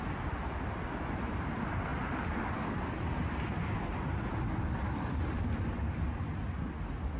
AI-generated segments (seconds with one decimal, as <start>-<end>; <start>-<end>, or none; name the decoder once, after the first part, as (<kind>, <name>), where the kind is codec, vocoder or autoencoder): none